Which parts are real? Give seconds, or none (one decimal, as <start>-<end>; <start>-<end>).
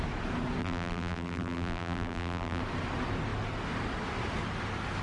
0.0-0.6; 2.6-5.0